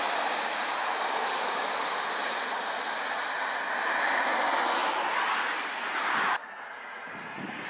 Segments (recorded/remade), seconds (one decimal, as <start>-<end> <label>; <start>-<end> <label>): 0.0-7.7 recorded